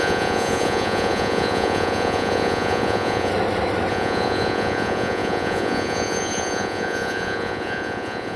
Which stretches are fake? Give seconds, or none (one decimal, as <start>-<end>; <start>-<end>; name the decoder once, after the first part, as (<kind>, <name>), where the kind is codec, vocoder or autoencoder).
0.0-3.3 (vocoder, Vocos); 3.9-8.4